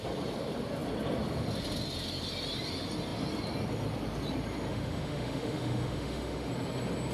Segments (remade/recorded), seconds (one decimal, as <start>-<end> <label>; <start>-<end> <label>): 0.0-4.7 recorded; 4.7-6.5 remade; 6.5-7.1 recorded